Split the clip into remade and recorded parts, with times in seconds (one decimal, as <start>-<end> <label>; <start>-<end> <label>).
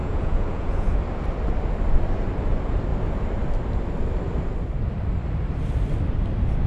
0.0-1.0 remade; 1.0-6.7 recorded